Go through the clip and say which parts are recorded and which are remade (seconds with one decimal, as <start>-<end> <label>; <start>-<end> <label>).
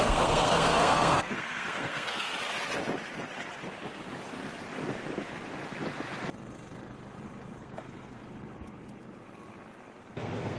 0.0-2.3 remade; 2.3-7.6 recorded; 7.6-8.2 remade; 8.2-10.0 recorded; 10.0-10.6 remade